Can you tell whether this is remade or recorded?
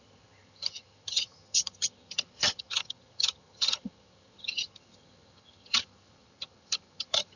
remade